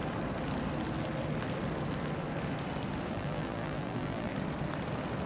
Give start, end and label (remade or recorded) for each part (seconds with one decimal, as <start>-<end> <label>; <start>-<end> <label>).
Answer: 0.0-3.1 recorded; 3.1-4.3 remade; 4.3-5.3 recorded